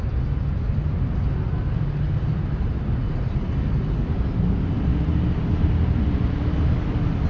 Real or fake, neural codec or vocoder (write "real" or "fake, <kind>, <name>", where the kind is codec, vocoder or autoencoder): real